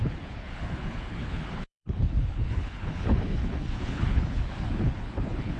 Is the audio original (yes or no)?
no